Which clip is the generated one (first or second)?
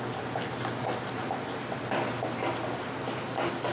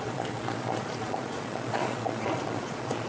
second